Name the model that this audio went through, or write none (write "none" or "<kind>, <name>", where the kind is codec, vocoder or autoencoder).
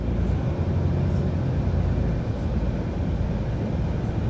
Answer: none